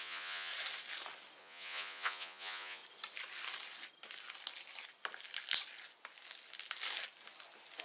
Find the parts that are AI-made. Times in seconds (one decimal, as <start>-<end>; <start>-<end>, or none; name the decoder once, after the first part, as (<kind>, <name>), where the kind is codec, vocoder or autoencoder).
0.0-0.5 (vocoder, Vocos); 1.4-2.8